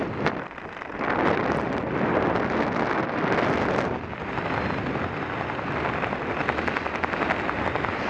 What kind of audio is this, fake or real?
real